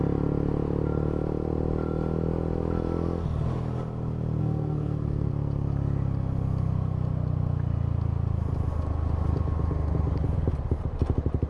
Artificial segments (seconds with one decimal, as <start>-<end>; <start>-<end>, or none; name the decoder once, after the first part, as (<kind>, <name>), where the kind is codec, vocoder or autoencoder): 4.4-5.3 (codec, SNAC)